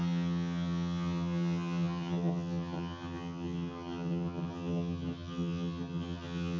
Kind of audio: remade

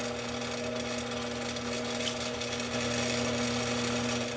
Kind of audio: recorded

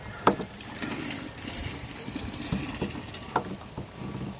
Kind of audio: recorded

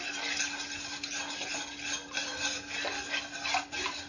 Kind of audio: recorded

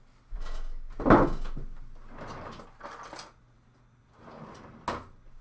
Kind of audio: recorded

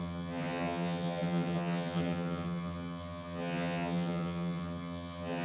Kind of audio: remade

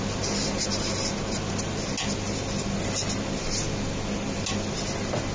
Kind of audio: recorded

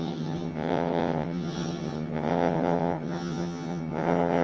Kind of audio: remade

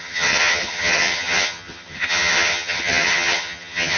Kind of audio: remade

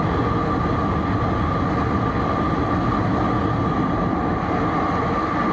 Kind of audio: recorded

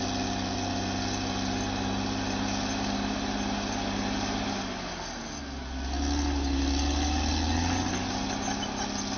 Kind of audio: recorded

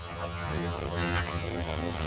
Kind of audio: remade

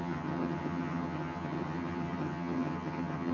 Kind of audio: remade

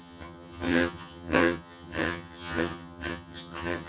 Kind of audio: remade